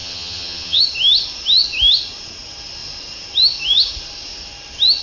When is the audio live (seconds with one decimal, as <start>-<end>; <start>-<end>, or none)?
0.8-5.0